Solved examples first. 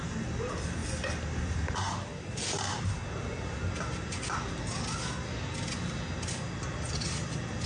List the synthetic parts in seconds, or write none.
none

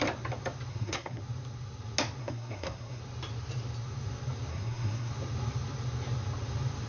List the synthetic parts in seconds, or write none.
0.7-1.2 (codec, SNAC); 2.2-3.0; 4.5-5.1

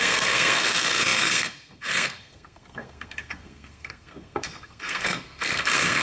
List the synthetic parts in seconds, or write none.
0.0-6.0 (codec, SNAC)

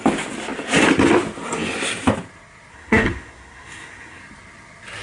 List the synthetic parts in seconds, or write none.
2.7-4.2 (codec, SNAC)

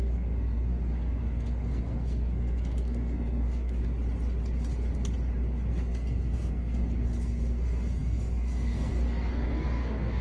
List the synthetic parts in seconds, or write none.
0.0-3.8 (codec, SNAC); 5.7-10.2

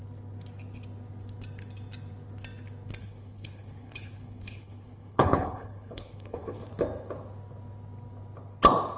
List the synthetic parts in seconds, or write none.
3.0-6.7 (codec, HILCodec)

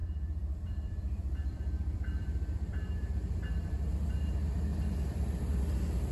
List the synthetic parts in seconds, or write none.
0.0-3.7 (vocoder, BigVGAN v2); 4.7-5.6

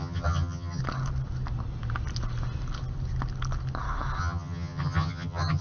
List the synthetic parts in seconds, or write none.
0.0-0.8 (vocoder, HiFi-GAN); 4.2-5.6